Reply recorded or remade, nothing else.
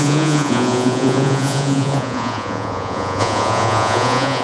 remade